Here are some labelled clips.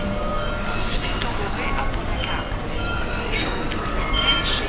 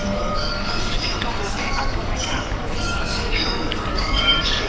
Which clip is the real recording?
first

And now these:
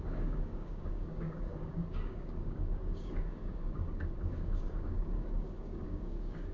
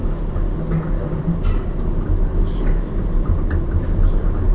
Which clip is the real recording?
second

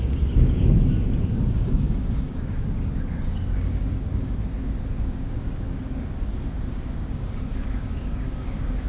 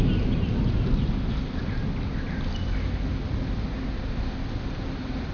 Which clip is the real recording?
second